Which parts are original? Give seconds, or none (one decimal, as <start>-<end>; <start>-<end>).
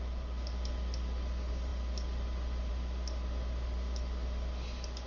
0.0-5.1